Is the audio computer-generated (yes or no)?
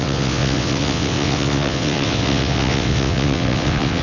yes